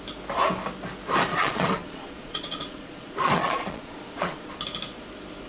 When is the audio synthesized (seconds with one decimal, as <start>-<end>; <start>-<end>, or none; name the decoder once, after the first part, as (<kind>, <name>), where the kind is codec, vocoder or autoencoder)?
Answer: 1.3-4.6 (vocoder, Vocos)

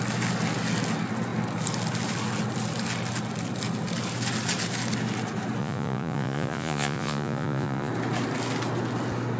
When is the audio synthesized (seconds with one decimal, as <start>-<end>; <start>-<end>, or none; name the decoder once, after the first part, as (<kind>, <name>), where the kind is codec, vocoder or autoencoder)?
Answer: 5.6-7.9 (vocoder, Vocos)

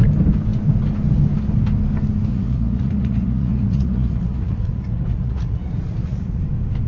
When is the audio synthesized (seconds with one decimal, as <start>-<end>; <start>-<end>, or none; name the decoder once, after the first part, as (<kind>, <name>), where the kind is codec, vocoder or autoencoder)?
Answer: 2.3-6.4 (vocoder, Vocos)

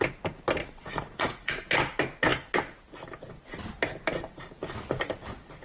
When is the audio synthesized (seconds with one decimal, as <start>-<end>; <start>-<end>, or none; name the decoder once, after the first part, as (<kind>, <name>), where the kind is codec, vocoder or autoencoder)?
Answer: 0.6-1.5 (vocoder, Vocos)

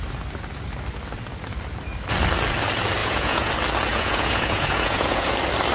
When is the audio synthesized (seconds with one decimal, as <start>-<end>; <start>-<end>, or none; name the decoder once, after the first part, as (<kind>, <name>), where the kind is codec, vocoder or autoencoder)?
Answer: 3.0-3.5 (vocoder, Vocos); 3.9-5.3

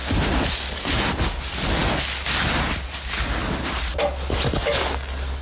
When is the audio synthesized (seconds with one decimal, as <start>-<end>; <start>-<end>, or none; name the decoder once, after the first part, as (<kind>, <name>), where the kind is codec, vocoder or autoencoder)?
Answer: none

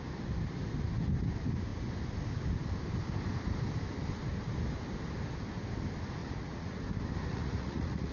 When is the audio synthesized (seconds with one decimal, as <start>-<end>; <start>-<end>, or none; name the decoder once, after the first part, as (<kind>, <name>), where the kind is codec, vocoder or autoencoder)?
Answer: 6.2-6.8 (vocoder, Vocos); 7.3-8.1

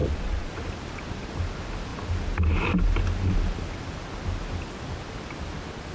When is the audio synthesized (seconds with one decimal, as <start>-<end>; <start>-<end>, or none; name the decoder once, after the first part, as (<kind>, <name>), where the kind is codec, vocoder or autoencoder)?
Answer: 0.0-0.5 (vocoder, Vocos)